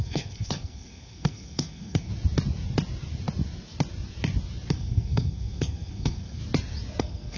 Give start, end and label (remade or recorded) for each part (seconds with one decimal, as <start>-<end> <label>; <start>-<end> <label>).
0.0-2.1 remade; 2.1-4.7 recorded; 4.7-6.4 remade; 6.4-7.0 recorded; 7.0-7.4 remade